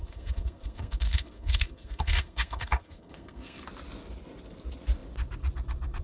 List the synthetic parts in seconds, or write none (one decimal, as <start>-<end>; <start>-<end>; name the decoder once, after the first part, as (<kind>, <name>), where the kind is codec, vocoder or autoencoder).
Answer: 0.0-3.6 (codec, SNAC)